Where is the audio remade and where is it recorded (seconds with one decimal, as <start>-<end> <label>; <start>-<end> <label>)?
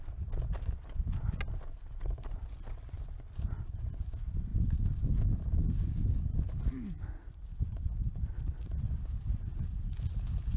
0.0-10.6 recorded